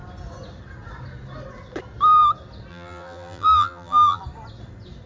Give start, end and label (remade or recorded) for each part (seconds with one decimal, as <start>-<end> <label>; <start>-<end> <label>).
0.0-2.7 recorded; 2.7-4.2 remade; 4.2-5.1 recorded